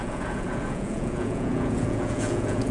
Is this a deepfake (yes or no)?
yes